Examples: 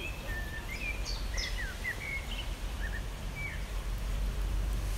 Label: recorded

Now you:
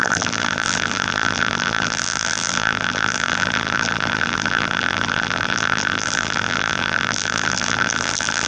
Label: remade